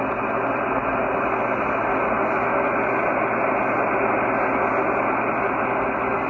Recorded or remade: recorded